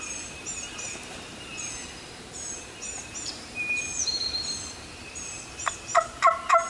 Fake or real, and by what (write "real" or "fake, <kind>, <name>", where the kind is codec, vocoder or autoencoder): fake, vocoder, BigVGAN v2